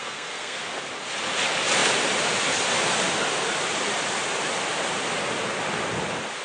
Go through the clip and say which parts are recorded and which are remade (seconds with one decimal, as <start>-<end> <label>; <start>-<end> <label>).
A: 0.0-0.6 remade; 0.6-6.4 recorded